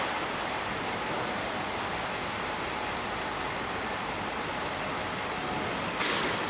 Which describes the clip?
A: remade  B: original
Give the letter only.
A